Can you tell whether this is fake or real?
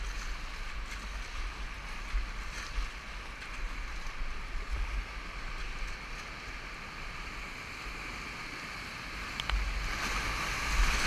real